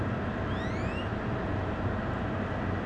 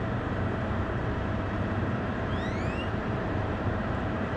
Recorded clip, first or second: first